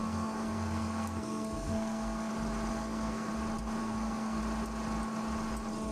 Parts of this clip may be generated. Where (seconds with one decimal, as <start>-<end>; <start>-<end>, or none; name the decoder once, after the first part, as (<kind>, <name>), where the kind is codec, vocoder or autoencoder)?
0.0-2.3 (codec, SNAC); 2.7-3.3; 3.8-4.4